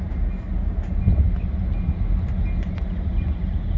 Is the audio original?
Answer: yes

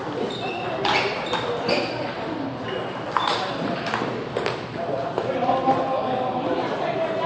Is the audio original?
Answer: yes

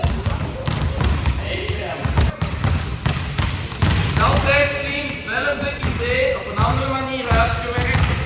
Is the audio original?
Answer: yes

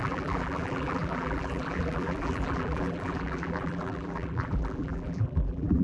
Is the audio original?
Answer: no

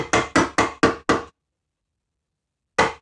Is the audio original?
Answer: yes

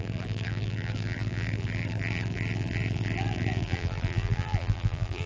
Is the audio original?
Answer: no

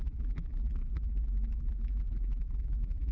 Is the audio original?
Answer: no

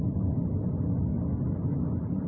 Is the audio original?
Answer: no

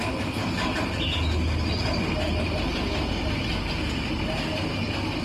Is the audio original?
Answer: yes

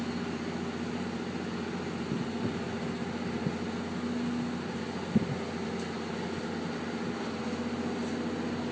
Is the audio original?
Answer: yes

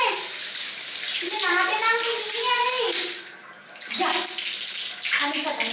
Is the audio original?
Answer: no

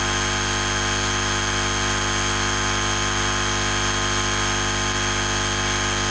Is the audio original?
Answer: yes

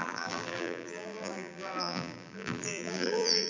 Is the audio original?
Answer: no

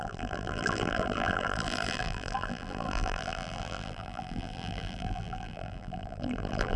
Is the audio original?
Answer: no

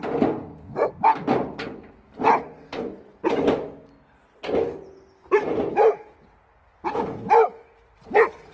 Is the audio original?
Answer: yes